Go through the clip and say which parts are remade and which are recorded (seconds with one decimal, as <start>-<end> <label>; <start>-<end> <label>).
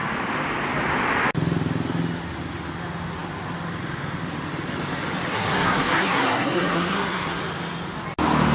0.0-5.3 recorded; 5.3-7.4 remade; 7.4-8.5 recorded